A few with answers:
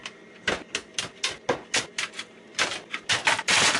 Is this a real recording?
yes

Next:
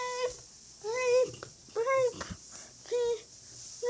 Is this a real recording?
yes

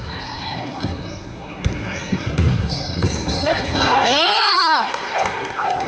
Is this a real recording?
no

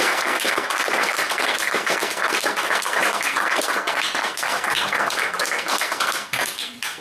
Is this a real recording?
no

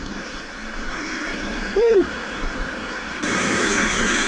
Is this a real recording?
no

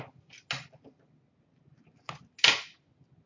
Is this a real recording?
yes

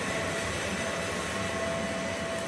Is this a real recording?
yes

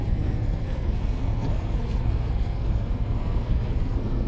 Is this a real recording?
no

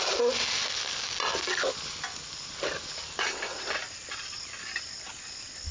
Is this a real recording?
yes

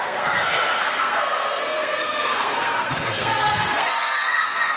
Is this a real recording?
no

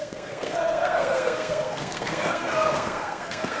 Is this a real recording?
no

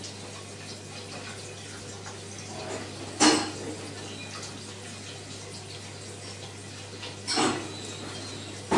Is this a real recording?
yes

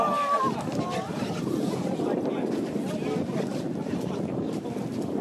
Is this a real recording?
yes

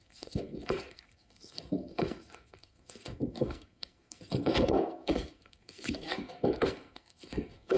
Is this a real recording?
no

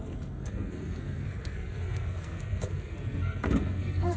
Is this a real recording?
no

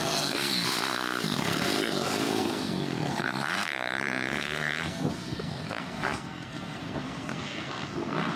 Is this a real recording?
no